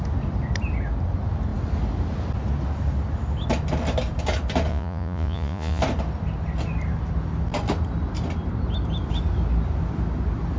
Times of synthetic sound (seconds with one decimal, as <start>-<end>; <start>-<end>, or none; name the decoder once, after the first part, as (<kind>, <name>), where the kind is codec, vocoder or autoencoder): 4.7-5.8 (vocoder, Vocos)